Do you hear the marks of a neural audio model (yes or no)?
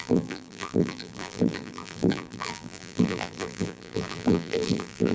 yes